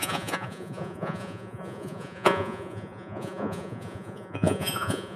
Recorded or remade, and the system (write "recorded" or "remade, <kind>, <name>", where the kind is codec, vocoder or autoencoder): remade, vocoder, Vocos